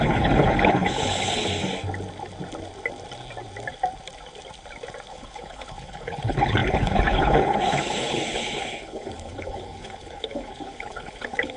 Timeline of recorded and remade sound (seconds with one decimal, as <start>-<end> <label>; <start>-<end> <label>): 0.0-1.6 remade; 1.6-5.1 recorded; 5.1-11.6 remade

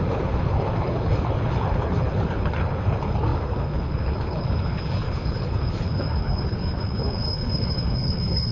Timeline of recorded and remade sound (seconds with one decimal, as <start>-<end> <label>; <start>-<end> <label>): 0.0-8.5 remade

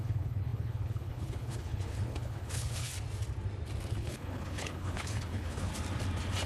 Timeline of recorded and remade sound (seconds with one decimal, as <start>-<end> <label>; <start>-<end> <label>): 0.0-2.9 remade; 2.9-3.9 recorded; 3.9-5.7 remade; 5.7-6.5 recorded

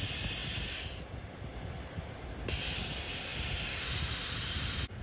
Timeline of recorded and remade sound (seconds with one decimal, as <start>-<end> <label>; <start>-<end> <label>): 0.0-5.0 recorded

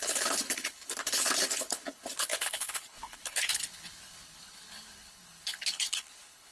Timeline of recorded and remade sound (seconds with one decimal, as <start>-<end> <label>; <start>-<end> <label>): 0.0-6.5 remade

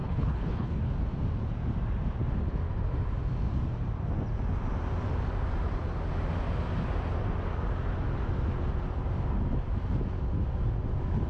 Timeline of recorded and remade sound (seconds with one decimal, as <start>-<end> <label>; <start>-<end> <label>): 0.0-0.8 remade; 0.8-11.3 recorded

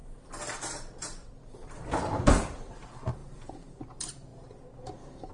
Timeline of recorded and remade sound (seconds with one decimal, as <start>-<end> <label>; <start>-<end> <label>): 0.0-5.3 recorded

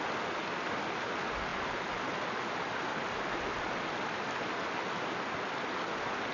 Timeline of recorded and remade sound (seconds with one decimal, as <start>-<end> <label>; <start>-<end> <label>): 0.0-6.3 recorded